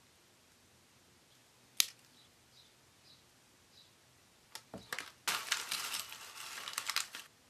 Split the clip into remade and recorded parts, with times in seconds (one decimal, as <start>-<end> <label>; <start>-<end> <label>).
0.0-7.5 recorded